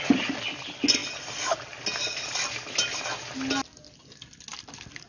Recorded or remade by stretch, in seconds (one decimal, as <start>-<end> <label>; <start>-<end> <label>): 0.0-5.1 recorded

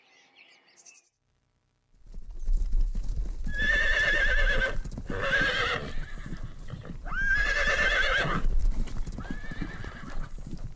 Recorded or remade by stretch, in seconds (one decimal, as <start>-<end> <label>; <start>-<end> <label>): 0.0-3.5 recorded; 3.5-4.3 remade; 4.3-8.6 recorded; 8.6-9.1 remade; 9.1-10.8 recorded

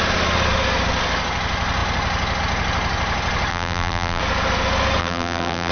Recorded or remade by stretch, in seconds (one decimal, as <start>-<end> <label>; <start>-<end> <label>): 0.0-3.5 recorded; 3.5-4.2 remade; 4.2-5.0 recorded; 5.0-5.7 remade

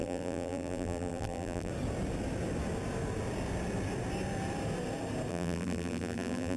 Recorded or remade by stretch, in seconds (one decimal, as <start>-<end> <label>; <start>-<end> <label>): 0.0-1.7 remade; 1.7-5.3 recorded; 5.3-6.6 remade

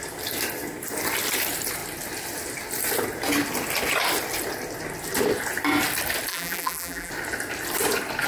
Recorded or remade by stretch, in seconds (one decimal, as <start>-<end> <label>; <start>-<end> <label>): 0.0-6.3 recorded; 6.3-7.1 remade; 7.1-8.3 recorded

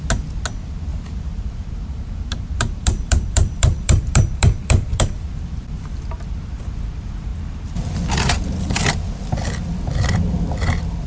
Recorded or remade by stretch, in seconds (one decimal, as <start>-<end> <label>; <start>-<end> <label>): 0.0-0.9 recorded; 0.9-6.0 remade; 6.0-11.1 recorded